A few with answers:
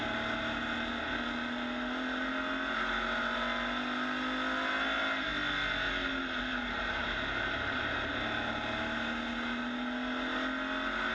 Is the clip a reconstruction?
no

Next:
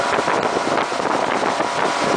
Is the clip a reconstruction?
no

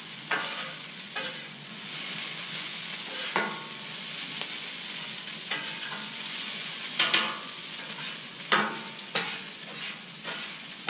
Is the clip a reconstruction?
yes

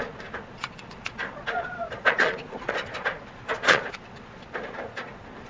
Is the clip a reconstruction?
yes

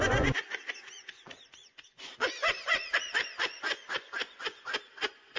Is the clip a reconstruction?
yes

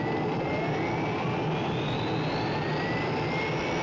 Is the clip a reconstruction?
no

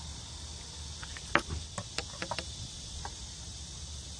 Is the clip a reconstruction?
no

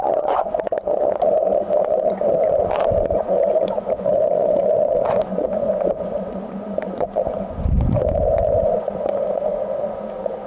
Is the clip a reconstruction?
yes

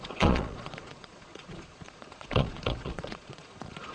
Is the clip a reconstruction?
yes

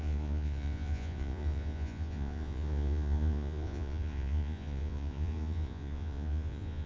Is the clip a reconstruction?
yes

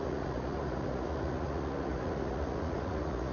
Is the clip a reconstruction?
yes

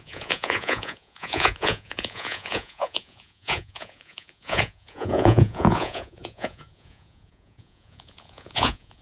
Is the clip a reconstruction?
yes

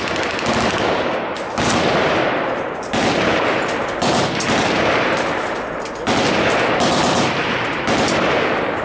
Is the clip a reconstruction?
no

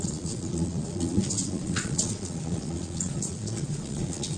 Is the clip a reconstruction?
yes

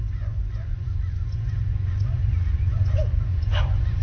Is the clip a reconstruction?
yes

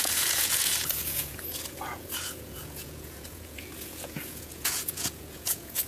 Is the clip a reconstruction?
yes